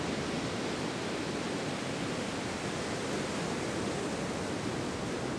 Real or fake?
real